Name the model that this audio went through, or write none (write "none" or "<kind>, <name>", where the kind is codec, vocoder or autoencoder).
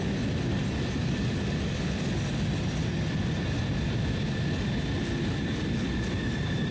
none